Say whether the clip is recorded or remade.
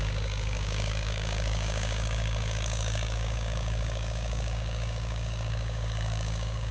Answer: remade